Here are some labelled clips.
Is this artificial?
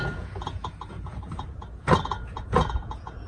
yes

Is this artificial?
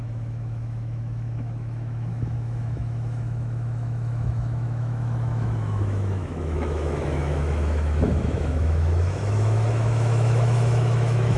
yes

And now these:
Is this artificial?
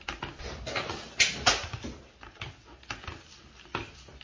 no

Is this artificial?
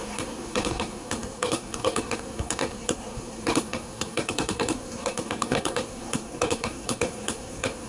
yes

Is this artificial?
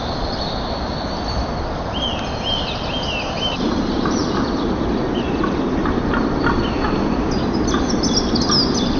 no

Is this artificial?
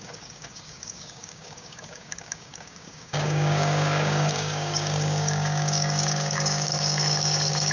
yes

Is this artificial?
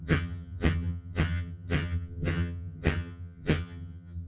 yes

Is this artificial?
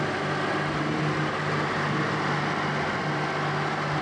no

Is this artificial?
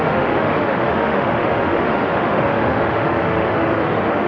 yes